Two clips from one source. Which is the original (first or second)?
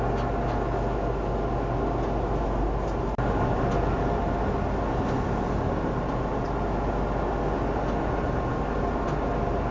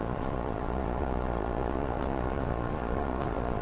first